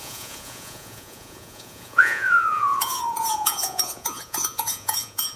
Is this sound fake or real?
fake